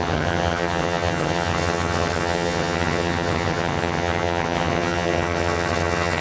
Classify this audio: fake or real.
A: fake